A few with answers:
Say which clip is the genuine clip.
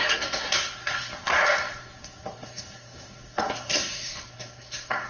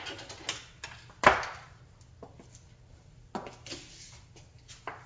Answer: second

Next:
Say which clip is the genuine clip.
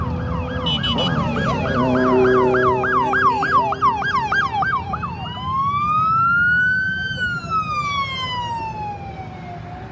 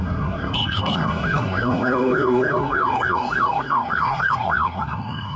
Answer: first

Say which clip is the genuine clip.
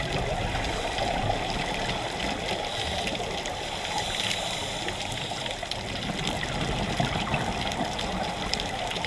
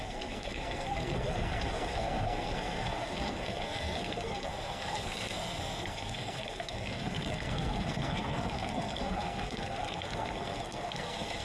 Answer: first